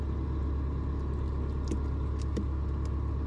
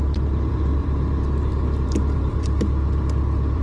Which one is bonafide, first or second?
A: first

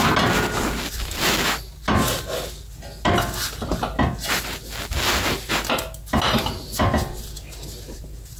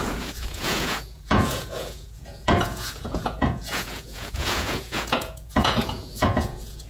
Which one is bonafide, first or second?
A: first